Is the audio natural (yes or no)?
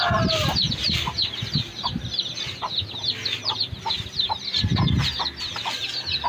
yes